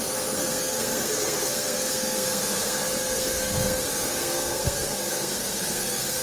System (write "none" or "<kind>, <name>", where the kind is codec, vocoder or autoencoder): codec, SNAC